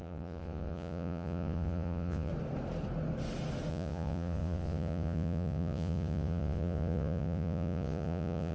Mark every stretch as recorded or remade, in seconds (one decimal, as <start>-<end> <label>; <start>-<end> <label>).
0.0-2.3 remade; 2.3-3.7 recorded; 3.7-8.5 remade

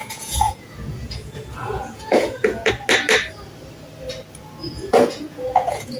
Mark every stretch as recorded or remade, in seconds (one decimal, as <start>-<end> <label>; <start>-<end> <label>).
0.0-2.7 remade; 2.7-4.6 recorded; 4.6-6.0 remade

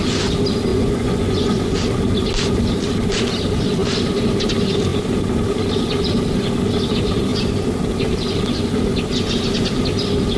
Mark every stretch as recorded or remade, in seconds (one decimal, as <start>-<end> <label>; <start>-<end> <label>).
0.0-0.7 recorded; 0.7-1.6 remade; 1.6-10.4 recorded

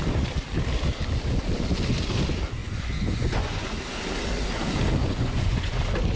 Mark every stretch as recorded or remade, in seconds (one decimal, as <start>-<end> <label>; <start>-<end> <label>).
0.0-2.6 recorded; 2.6-3.8 remade; 3.8-5.0 recorded; 5.0-5.8 remade; 5.8-6.2 recorded

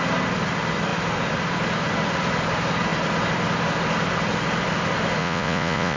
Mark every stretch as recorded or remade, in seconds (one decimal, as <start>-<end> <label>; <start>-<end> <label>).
0.0-5.2 recorded; 5.2-6.0 remade

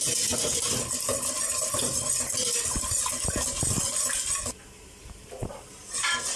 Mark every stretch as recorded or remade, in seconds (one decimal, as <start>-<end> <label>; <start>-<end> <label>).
0.0-6.4 recorded

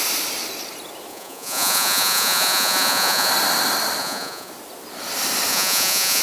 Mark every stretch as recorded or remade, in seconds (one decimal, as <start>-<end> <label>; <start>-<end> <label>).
0.0-1.1 recorded; 1.1-3.3 remade; 3.3-4.0 recorded; 4.0-4.5 remade; 4.5-5.5 recorded; 5.5-6.2 remade